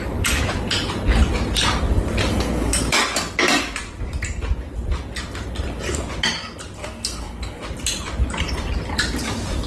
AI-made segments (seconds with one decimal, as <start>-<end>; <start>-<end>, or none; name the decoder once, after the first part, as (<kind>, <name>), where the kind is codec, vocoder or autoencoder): 2.3-2.8 (codec, SNAC); 6.8-7.6